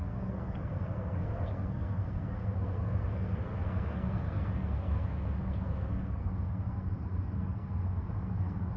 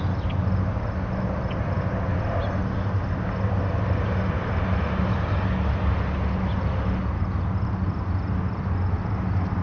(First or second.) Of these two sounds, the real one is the second